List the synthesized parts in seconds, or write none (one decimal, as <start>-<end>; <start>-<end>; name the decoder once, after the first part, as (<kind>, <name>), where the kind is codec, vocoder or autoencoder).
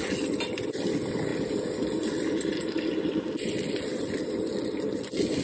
none